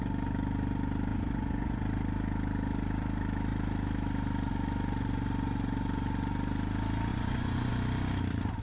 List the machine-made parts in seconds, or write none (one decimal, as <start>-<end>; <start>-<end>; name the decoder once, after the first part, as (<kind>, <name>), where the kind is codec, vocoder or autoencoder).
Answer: 1.1-1.8 (vocoder, Vocos); 7.1-7.7